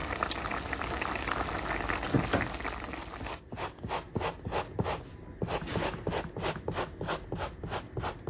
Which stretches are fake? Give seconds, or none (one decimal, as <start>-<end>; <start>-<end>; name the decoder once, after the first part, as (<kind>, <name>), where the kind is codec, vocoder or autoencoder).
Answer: none